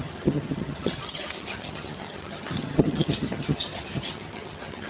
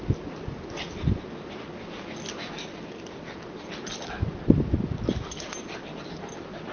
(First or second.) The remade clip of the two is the first